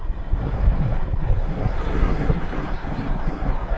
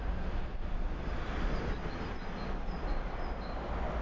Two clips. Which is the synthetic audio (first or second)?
first